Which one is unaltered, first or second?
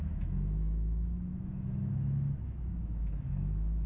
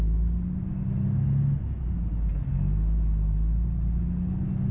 second